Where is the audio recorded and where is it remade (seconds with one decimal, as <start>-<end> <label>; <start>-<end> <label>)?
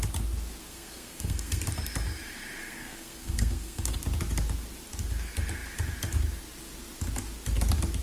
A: 0.0-0.6 recorded; 0.6-1.6 remade; 1.6-2.6 recorded; 2.6-4.0 remade; 4.0-8.0 recorded